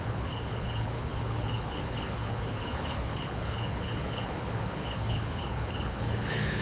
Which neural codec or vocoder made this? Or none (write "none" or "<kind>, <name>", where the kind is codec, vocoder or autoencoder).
codec, HILCodec